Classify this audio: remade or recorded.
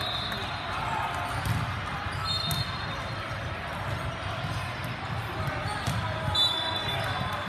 recorded